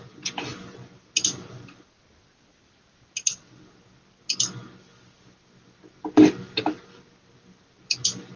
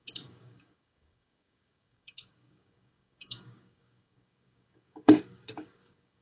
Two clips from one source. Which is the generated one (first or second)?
second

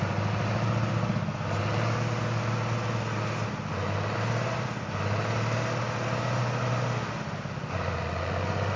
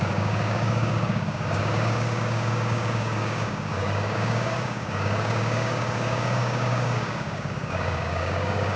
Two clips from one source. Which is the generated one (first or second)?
second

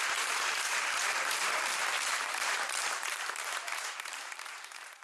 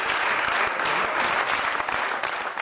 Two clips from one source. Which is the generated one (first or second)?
first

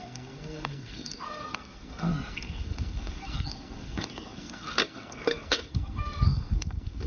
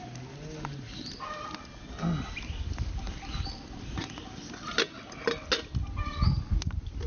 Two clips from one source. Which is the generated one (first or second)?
first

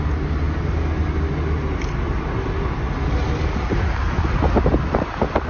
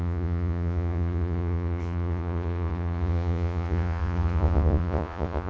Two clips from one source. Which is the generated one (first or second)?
second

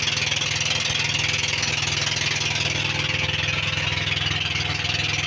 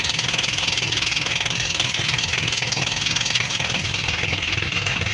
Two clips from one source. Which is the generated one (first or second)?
second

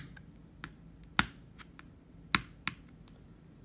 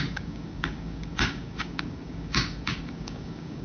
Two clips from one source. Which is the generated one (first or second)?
second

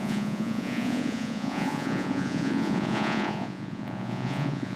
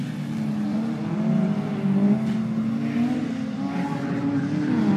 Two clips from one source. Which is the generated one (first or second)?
first